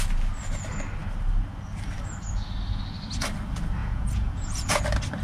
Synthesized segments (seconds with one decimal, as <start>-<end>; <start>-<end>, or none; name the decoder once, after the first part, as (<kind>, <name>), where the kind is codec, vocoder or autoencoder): 3.8-4.8 (vocoder, Vocos)